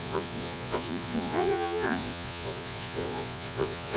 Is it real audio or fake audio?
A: fake